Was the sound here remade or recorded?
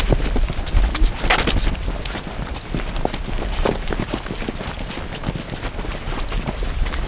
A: recorded